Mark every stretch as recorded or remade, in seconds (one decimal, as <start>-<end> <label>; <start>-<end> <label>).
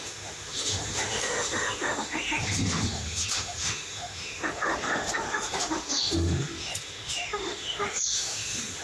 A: 0.0-8.8 remade